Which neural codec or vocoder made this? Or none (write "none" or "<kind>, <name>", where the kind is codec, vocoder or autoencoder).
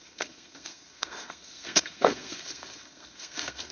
codec, SNAC